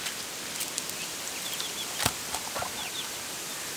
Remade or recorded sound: remade